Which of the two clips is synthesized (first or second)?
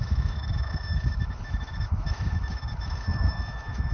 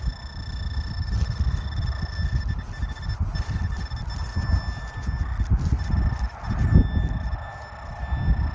first